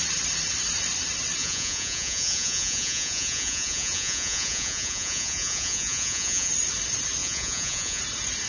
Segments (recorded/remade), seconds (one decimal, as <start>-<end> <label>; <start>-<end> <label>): 0.0-1.4 recorded; 1.4-6.5 remade; 6.5-7.2 recorded; 7.2-8.0 remade; 8.0-8.5 recorded